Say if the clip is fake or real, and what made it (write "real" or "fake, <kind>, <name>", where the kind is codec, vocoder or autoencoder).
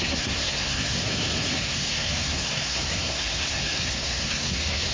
fake, codec, SNAC